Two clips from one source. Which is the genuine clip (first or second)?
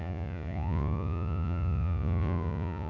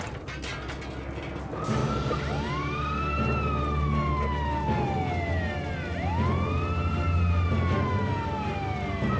second